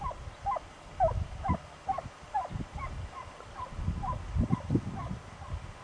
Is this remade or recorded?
recorded